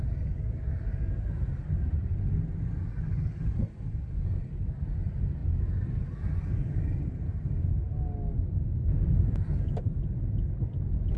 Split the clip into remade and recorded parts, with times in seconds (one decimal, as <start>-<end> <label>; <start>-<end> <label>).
0.0-11.2 recorded